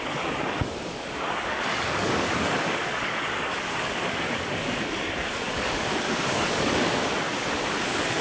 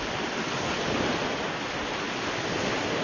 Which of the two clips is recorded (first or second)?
second